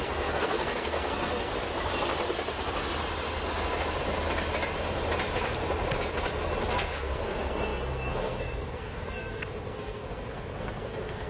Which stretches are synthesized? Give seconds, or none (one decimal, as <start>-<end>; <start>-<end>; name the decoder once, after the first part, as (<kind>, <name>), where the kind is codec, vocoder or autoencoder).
0.0-1.5 (codec, SNAC); 6.7-11.3